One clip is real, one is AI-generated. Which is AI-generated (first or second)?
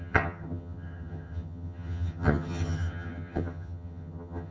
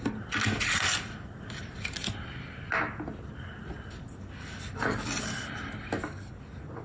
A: first